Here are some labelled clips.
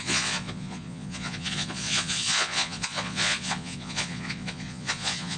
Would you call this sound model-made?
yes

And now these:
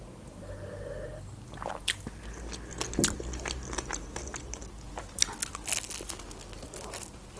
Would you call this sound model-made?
no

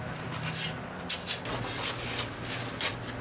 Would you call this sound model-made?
no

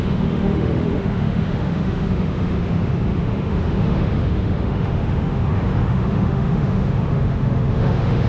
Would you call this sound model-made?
yes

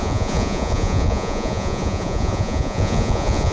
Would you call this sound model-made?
yes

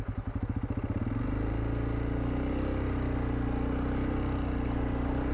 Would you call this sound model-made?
no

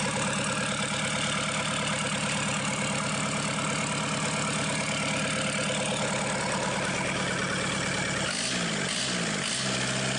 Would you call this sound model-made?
no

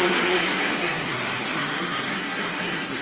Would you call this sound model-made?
yes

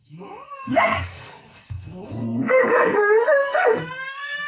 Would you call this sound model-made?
yes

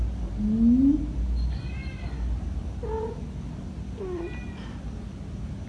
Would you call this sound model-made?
no